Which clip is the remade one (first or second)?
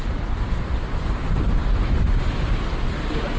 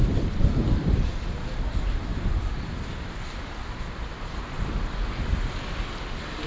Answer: first